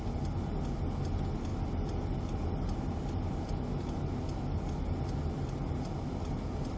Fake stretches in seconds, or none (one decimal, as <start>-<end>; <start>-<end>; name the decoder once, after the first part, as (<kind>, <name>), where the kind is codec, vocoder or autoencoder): none